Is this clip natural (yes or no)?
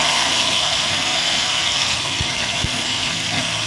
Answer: no